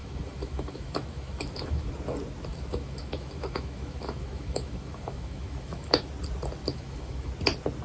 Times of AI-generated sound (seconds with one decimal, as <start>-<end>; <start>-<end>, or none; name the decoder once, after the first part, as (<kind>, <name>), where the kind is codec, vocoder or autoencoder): 0.0-1.9 (autoencoder, DAC-VAE); 2.5-6.1; 6.6-7.3